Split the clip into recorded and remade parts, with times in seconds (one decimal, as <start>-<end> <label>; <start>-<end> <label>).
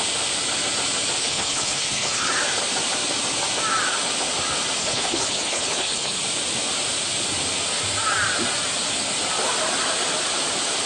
0.0-1.2 recorded; 1.2-2.3 remade; 2.3-4.8 recorded; 4.8-6.2 remade; 6.2-10.9 recorded